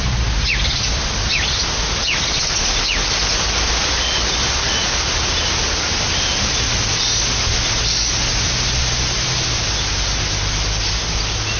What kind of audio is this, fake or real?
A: real